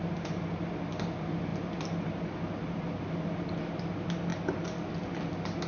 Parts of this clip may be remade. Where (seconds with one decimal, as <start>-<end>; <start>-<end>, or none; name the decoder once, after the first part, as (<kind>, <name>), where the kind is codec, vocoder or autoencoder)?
none